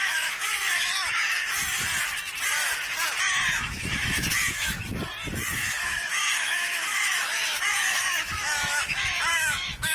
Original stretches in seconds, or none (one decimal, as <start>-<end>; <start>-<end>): 1.4-3.2; 4.8-5.5